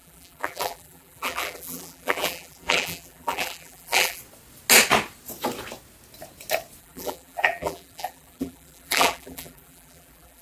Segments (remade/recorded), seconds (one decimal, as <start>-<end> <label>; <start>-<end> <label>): 0.0-4.2 remade; 4.2-6.8 recorded; 6.8-10.4 remade